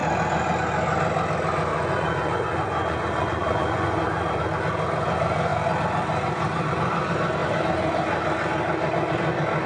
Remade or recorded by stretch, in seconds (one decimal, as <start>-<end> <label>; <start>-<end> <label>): 0.0-1.7 recorded; 1.7-4.4 remade; 4.4-9.7 recorded